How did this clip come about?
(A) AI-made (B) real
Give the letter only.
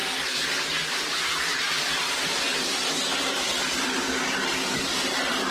A